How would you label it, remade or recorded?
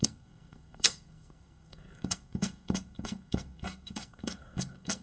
remade